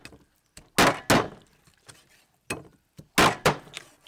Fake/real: real